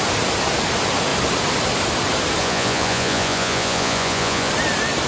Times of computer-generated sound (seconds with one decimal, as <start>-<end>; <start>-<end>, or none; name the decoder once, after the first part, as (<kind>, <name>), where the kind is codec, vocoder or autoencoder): 2.4-4.5 (vocoder, Vocos)